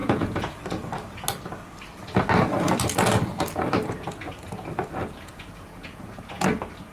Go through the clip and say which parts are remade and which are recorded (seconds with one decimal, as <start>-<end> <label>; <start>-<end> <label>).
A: 0.0-0.6 remade; 0.6-5.0 recorded; 5.0-6.4 remade; 6.4-6.9 recorded